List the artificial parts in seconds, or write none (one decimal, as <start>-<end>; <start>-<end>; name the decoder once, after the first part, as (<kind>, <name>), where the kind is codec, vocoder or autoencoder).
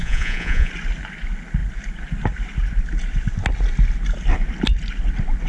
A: 0.0-0.7 (vocoder, Vocos)